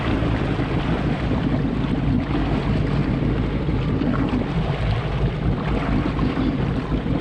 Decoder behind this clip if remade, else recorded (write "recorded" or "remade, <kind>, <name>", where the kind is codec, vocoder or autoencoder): recorded